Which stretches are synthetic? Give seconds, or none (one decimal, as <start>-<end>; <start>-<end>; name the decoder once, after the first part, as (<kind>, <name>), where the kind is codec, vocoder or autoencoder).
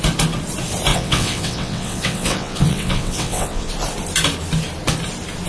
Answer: 0.9-3.7 (vocoder, WaveNeXt)